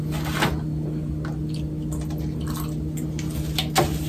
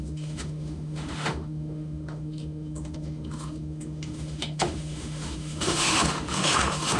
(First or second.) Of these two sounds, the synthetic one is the second